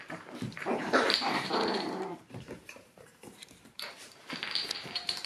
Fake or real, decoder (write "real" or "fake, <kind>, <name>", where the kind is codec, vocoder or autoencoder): fake, vocoder, BigVGAN v2